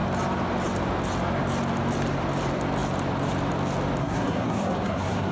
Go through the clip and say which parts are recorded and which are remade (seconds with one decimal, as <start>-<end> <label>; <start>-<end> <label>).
0.0-4.0 recorded; 4.0-5.3 remade